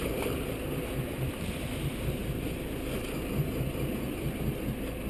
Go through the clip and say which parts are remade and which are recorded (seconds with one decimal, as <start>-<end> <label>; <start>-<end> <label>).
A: 0.0-5.1 recorded